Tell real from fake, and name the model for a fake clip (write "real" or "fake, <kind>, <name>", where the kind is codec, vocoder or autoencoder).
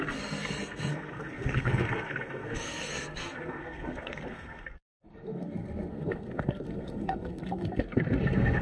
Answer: fake, codec, SNAC